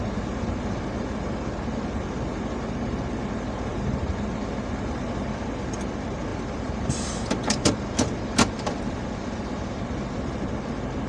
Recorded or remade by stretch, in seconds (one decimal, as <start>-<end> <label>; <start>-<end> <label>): 0.0-3.7 recorded; 3.7-4.5 remade; 4.5-6.3 recorded; 6.3-10.5 remade; 10.5-11.1 recorded